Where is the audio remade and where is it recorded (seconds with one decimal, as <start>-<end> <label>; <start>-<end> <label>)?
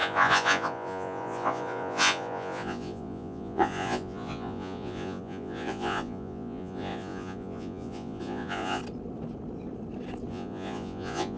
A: 0.0-8.8 remade; 8.8-10.3 recorded; 10.3-11.4 remade